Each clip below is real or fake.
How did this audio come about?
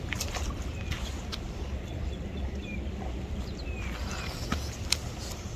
real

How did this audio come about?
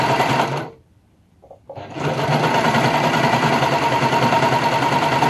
fake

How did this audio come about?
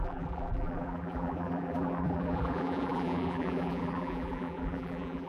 fake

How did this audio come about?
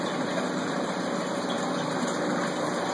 real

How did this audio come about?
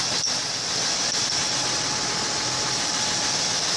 fake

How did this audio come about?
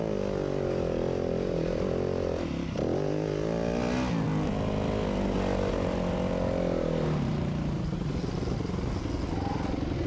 real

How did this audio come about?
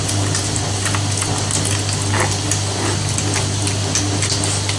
real